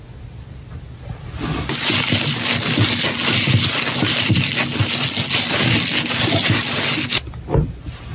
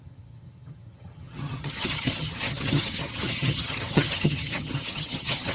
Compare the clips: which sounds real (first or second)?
first